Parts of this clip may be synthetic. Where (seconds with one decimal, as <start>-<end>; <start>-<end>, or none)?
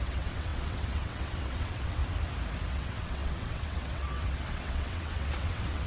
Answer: 0.0-2.0; 2.7-5.9